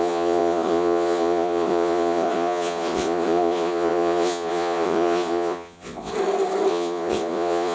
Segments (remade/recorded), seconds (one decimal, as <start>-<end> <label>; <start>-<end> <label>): 0.0-6.1 remade; 6.1-6.7 recorded; 6.7-7.7 remade